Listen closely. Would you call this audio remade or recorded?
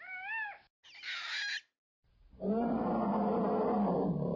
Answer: recorded